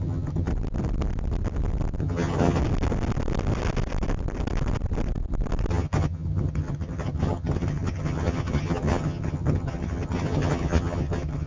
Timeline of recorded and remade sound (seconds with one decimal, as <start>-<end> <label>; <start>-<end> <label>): 0.0-0.5 remade; 0.5-2.0 recorded; 2.0-2.6 remade; 2.6-5.7 recorded; 5.7-11.5 remade